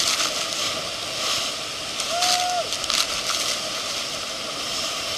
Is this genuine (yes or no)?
yes